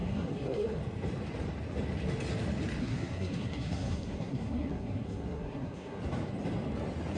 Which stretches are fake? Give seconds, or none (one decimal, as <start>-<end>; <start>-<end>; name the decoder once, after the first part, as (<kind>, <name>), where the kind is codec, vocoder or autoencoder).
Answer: 0.0-0.8 (codec, SNAC); 2.8-6.0